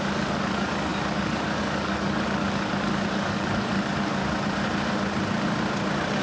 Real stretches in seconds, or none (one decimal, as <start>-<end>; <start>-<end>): 4.2-6.2